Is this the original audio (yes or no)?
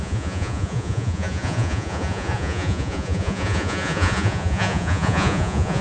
no